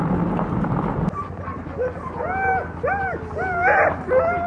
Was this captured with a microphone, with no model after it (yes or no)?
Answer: yes